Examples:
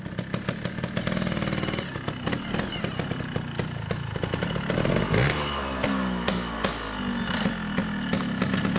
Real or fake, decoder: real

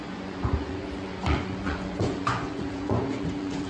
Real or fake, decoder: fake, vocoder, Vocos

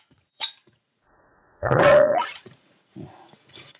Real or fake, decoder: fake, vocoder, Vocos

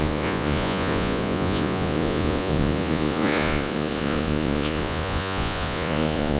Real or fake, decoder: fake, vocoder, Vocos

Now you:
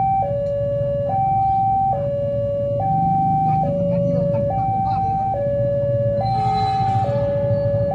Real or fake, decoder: real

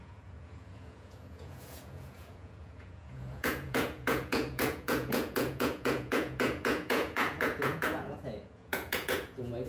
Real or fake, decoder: fake, vocoder, Vocos